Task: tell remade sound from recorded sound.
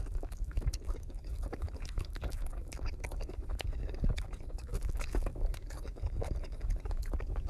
remade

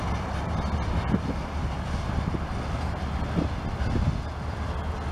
recorded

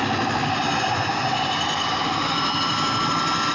recorded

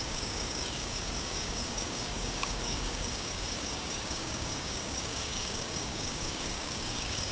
remade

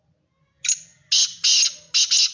recorded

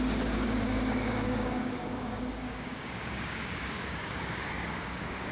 remade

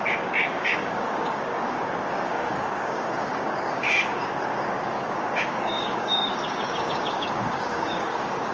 remade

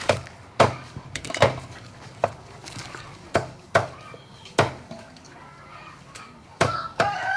remade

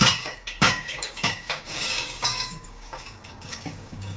remade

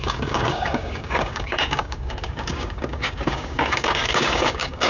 remade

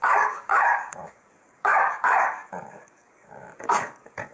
remade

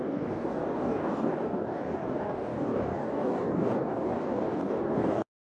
remade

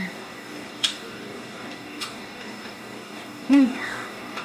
remade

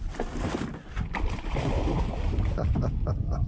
recorded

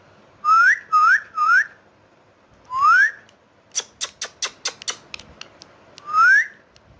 recorded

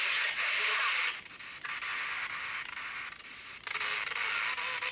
recorded